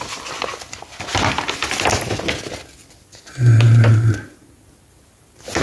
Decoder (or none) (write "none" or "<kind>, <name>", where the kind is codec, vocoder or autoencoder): none